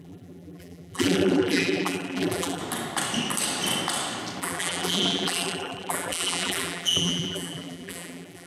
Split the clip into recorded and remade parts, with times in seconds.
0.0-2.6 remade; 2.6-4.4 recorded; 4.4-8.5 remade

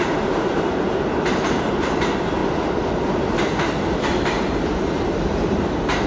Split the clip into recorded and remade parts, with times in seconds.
0.0-2.4 remade; 2.4-2.9 recorded; 2.9-6.1 remade

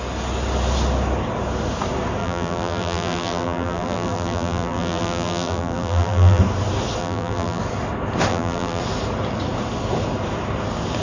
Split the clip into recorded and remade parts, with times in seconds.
0.0-2.2 recorded; 2.2-6.4 remade; 6.4-7.0 recorded; 7.0-7.6 remade; 7.6-8.3 recorded; 8.3-8.8 remade; 8.8-11.0 recorded

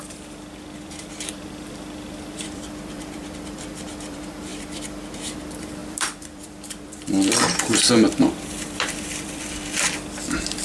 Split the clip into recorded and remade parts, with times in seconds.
0.0-10.6 remade

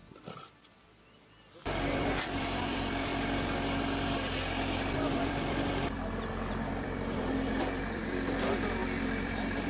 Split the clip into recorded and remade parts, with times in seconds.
0.0-0.5 recorded; 0.5-3.1 remade; 3.1-4.9 recorded; 4.9-9.7 remade

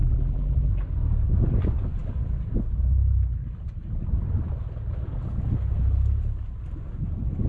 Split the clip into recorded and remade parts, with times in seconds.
0.0-0.7 remade; 0.7-7.5 recorded